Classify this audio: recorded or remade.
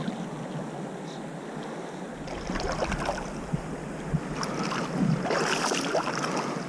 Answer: recorded